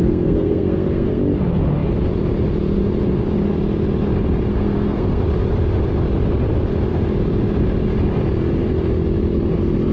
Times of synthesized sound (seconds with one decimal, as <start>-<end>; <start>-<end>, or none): 0.0-1.2; 4.5-5.2